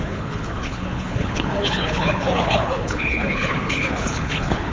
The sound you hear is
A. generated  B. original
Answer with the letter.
A